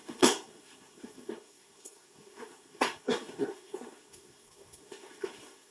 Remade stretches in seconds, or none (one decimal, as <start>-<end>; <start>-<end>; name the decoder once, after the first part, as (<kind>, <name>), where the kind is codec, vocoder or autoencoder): 0.0-5.7 (codec, SNAC)